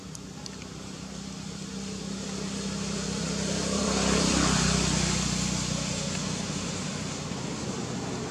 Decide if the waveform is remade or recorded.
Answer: remade